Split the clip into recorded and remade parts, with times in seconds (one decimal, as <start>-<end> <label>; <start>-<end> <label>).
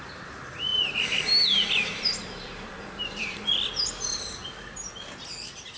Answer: 0.0-0.7 recorded; 0.7-3.5 remade; 3.5-5.8 recorded